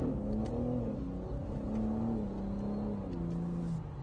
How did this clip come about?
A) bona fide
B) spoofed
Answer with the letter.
A